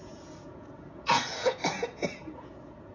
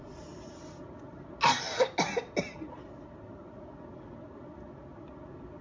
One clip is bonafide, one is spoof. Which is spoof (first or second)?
first